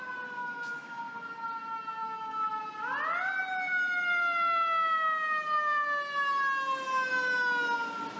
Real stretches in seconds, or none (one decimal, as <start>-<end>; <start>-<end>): 0.0-0.4; 1.0-2.0; 2.6-8.2